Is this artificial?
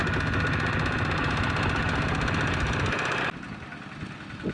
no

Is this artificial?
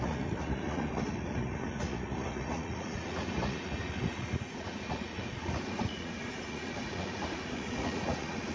yes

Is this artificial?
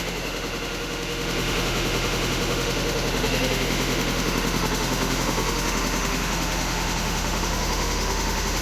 yes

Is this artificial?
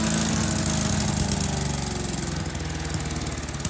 no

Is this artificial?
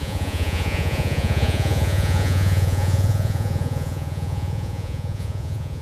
yes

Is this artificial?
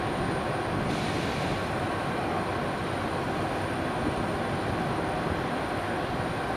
no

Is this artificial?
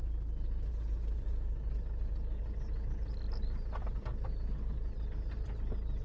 no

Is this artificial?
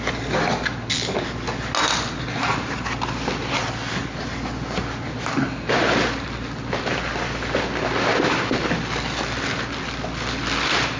no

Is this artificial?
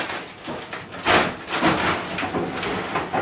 no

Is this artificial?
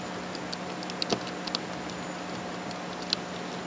no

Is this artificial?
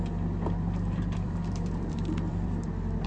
yes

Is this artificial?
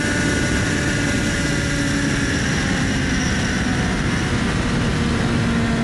no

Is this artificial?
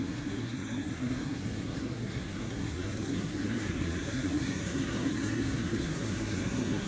yes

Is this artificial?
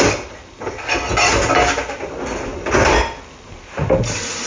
no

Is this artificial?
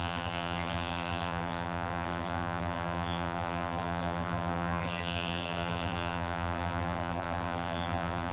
yes